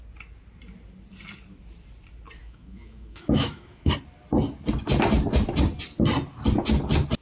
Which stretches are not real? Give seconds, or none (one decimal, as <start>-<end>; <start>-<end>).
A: 2.4-3.9